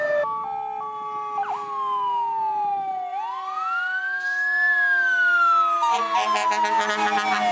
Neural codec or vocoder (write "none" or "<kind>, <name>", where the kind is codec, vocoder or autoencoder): none